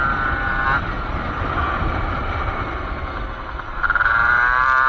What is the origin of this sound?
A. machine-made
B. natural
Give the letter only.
A